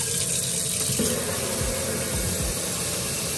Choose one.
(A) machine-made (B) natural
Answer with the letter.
B